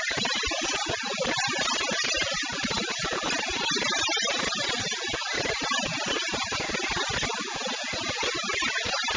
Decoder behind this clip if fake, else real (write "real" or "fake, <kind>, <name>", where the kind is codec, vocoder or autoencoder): real